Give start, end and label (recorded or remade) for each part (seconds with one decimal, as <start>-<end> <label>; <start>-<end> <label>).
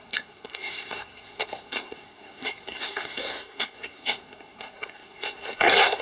0.0-6.0 remade